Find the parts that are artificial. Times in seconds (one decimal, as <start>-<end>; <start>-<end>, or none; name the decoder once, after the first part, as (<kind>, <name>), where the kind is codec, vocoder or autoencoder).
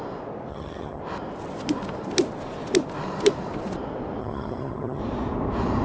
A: 0.5-1.0 (vocoder, HiFi-GAN); 4.2-5.0